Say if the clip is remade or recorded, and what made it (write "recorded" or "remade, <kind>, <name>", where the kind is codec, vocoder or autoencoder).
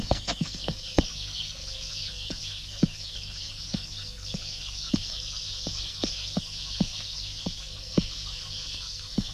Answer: remade, codec, SNAC